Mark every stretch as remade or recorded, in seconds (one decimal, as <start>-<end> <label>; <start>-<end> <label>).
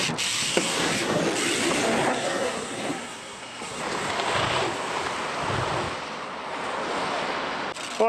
0.0-0.5 recorded; 0.5-1.2 remade; 1.2-2.1 recorded; 2.1-3.8 remade; 3.8-8.1 recorded